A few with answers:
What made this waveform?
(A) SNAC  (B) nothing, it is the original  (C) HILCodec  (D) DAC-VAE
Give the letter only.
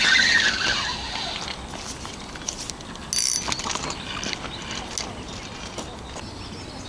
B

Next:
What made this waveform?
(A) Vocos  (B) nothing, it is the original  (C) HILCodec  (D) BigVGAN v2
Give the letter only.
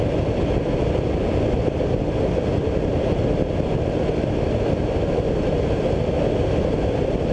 B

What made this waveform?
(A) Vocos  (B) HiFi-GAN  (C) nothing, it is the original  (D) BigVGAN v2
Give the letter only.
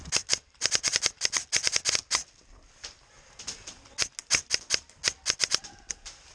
C